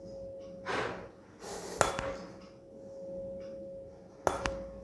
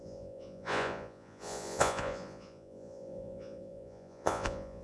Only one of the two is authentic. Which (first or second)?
first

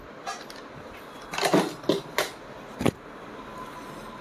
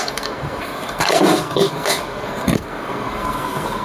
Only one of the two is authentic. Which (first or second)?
first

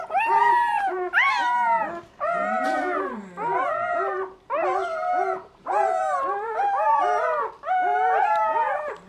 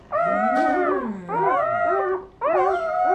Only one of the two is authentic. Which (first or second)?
second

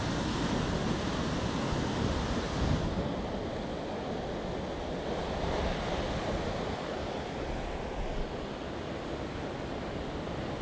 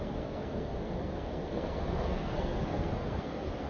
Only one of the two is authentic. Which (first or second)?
first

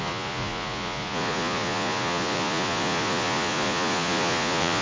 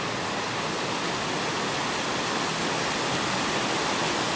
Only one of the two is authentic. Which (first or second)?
second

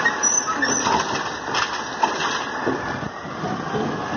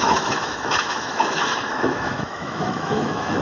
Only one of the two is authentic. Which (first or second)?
first